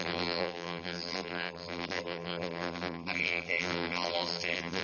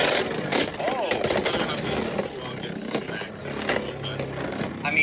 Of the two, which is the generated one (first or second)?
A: first